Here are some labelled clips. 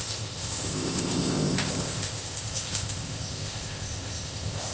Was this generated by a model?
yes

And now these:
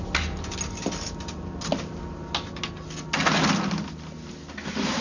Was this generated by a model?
no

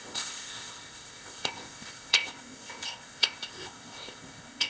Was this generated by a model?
yes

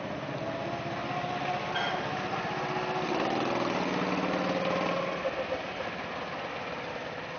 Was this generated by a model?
no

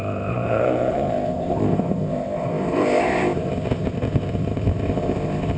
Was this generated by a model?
yes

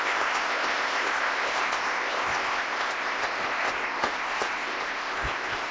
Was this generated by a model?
yes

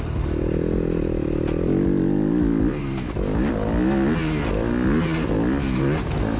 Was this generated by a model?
no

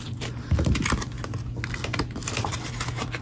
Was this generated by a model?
no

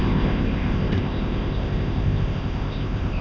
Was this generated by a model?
yes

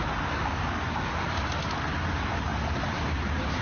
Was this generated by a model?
no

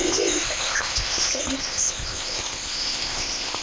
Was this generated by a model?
yes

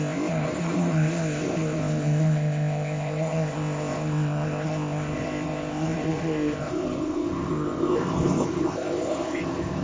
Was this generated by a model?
yes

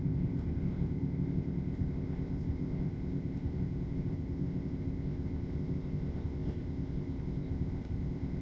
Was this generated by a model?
yes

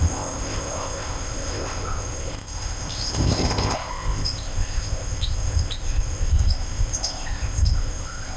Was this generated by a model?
yes